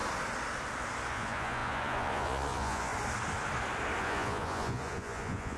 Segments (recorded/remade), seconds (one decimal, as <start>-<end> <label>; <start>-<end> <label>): 0.0-1.1 recorded; 1.1-2.9 remade; 2.9-4.0 recorded; 4.0-5.6 remade